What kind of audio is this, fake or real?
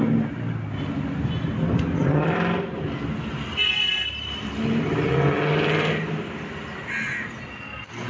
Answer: real